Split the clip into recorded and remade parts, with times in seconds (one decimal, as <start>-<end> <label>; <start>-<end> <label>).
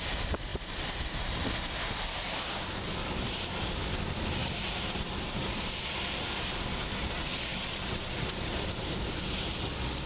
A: 0.0-4.4 recorded; 4.4-5.8 remade; 5.8-7.5 recorded; 7.5-9.6 remade; 9.6-10.1 recorded